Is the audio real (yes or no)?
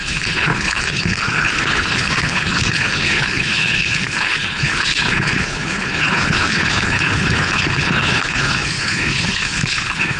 no